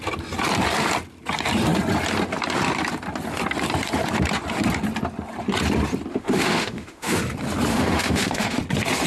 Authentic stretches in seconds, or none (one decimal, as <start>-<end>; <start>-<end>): 0.0-6.1; 7.2-7.7; 8.6-9.1